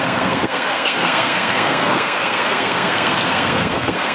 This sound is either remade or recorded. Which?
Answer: remade